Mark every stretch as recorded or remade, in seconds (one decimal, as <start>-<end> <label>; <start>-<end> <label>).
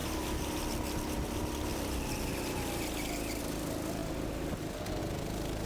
0.0-5.7 recorded